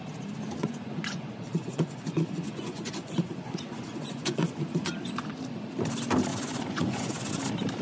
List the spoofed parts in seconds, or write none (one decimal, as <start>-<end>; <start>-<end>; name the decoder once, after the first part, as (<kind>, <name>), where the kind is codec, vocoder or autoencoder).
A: 0.6-4.9 (vocoder, Vocos); 6.3-7.3